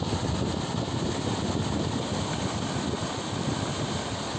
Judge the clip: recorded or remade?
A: recorded